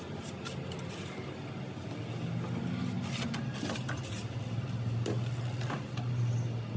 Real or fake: real